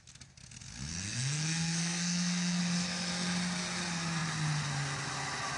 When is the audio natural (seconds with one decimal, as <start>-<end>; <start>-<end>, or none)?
0.0-0.9; 2.6-5.6